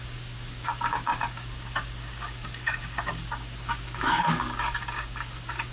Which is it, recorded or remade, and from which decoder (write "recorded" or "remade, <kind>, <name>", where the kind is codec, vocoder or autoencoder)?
remade, codec, DAC